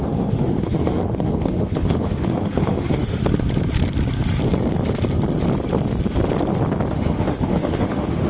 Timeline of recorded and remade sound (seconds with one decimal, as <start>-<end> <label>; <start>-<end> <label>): 0.0-3.2 remade; 3.2-6.9 recorded; 6.9-8.3 remade